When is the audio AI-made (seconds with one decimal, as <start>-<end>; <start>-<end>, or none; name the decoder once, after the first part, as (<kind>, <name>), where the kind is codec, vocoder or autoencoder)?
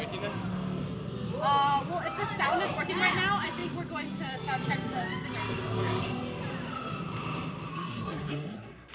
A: 7.7-8.9 (codec, SNAC)